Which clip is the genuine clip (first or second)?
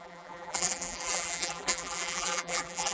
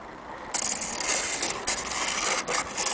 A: second